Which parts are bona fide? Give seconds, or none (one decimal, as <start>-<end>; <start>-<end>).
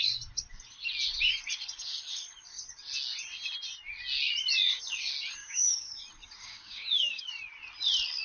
0.0-5.4; 6.0-6.4; 7.3-8.2